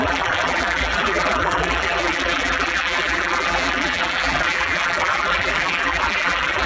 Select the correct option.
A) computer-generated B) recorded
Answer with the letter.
A